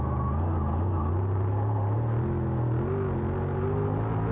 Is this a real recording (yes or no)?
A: yes